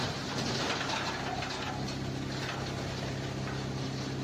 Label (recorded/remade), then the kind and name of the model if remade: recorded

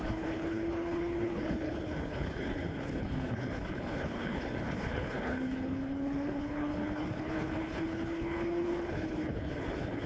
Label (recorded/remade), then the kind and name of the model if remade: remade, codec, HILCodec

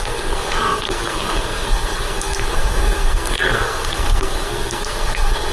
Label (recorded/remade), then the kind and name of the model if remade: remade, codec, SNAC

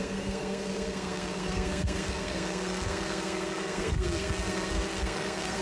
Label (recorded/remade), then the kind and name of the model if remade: remade, codec, SNAC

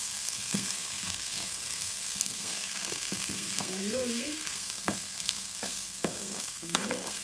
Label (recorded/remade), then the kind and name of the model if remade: remade, codec, SNAC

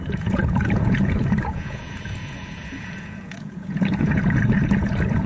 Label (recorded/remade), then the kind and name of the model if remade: remade, vocoder, Vocos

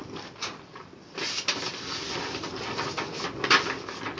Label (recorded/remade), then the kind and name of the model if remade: recorded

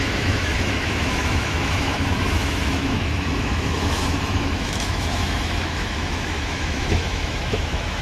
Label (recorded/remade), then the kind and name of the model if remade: remade, autoencoder, DAC-VAE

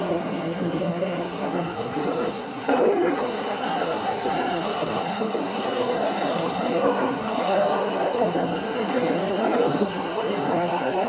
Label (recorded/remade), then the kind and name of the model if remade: remade, codec, SNAC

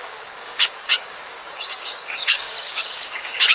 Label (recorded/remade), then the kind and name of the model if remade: remade, codec, DAC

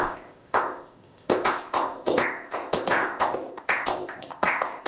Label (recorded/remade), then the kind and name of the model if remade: remade, codec, ZipCodec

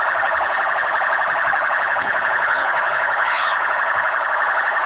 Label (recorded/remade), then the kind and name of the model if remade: remade, codec, HILCodec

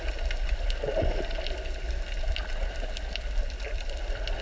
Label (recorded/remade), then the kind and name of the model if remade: recorded